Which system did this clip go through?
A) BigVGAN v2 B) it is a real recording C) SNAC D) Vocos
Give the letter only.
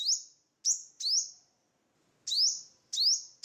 B